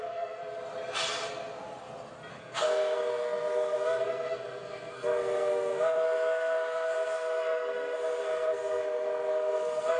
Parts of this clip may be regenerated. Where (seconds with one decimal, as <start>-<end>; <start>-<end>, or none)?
0.0-0.4; 2.3-10.0